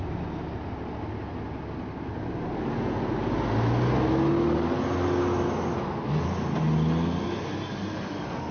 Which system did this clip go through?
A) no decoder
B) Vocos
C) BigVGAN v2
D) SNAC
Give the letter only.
A